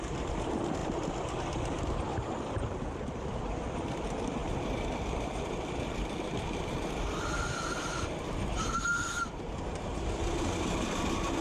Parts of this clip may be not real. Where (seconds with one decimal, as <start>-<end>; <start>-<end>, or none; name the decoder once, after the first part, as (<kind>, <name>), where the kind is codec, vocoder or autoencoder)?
0.0-0.8 (vocoder, BigVGAN v2); 1.8-11.4